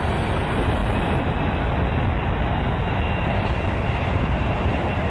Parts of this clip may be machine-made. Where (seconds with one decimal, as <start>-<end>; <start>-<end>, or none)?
0.0-0.8; 3.9-5.1

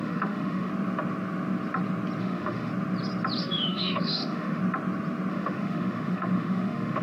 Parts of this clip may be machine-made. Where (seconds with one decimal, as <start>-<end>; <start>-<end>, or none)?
0.0-0.7; 2.2-2.7; 3.4-4.6; 5.3-7.0

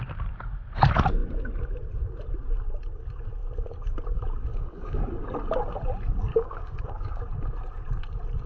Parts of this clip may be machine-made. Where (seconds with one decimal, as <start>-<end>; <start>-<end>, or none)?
4.5-5.0; 6.3-7.2

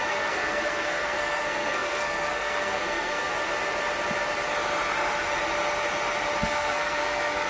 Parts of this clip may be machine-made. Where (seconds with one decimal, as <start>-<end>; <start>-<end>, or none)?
0.0-3.3; 6.4-7.5

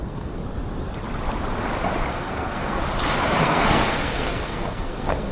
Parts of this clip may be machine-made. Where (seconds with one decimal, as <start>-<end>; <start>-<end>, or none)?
0.0-0.4; 2.1-2.8; 3.4-5.3